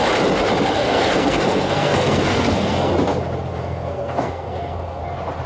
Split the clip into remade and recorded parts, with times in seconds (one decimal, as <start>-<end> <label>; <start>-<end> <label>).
0.0-0.8 recorded; 0.8-2.9 remade; 2.9-3.5 recorded; 3.5-5.0 remade; 5.0-5.5 recorded